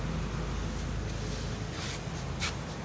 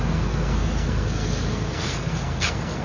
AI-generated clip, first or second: second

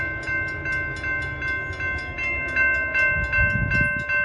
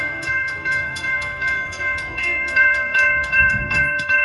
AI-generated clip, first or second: second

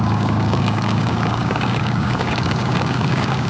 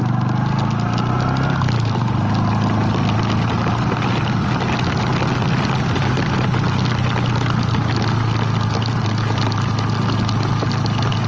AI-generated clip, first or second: first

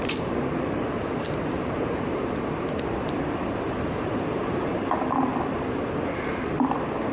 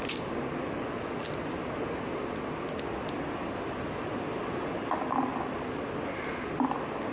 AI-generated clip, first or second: first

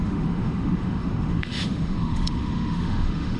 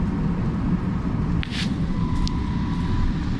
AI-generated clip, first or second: first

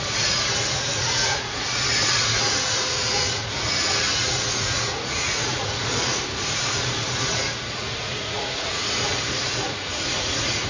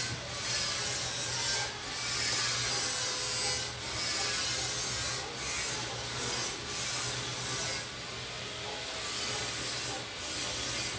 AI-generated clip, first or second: first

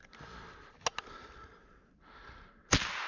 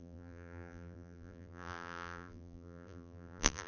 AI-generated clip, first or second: second